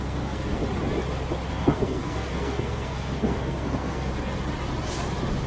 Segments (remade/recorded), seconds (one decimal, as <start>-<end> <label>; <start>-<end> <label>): 0.0-0.6 remade; 0.6-1.5 recorded; 1.5-4.1 remade; 4.1-5.5 recorded